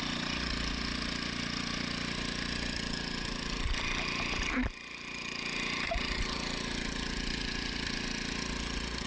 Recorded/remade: recorded